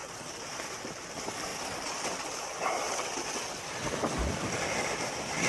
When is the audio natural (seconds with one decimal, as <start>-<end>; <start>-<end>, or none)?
0.0-5.5

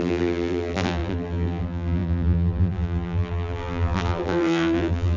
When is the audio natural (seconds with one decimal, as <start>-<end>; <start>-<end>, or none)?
none